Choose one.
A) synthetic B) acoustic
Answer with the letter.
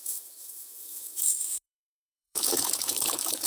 A